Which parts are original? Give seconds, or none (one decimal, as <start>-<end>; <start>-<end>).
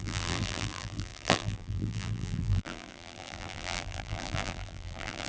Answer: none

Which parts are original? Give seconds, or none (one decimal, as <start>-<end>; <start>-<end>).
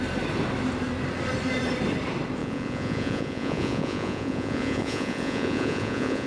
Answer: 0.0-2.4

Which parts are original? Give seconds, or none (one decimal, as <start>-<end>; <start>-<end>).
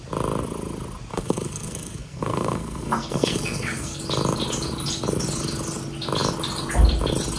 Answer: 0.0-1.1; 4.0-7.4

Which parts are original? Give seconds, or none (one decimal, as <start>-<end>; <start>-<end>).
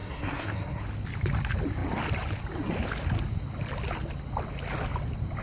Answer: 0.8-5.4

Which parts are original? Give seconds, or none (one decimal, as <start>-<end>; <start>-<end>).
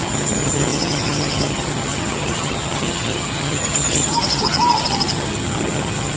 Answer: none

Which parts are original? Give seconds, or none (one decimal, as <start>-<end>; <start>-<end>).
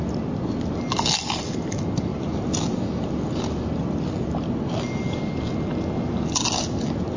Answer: 0.0-2.1; 3.9-7.2